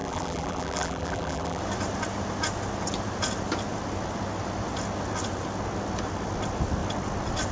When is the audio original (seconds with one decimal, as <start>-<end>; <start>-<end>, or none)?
1.6-7.5